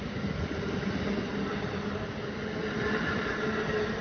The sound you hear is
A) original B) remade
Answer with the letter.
A